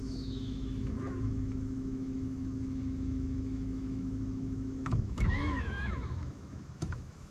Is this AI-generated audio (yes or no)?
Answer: yes